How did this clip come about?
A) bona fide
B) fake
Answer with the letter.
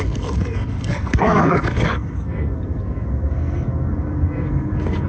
B